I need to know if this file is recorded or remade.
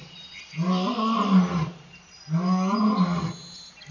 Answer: recorded